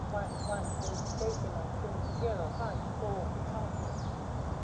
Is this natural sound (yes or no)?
yes